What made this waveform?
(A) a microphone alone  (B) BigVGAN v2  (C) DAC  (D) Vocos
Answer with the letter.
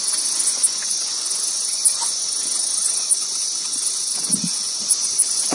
D